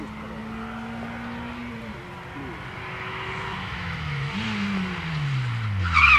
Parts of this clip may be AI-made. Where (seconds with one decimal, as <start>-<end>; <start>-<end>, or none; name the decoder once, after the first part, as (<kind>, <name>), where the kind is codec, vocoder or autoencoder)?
3.6-4.3 (autoencoder, DAC-VAE)